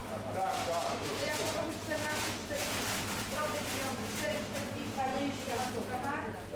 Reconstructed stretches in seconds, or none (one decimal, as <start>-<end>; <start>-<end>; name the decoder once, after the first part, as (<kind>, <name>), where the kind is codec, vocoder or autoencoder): 2.4-3.2 (vocoder, BigVGAN v2)